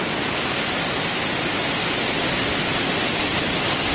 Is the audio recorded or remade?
recorded